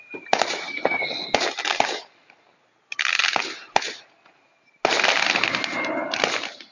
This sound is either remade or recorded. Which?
recorded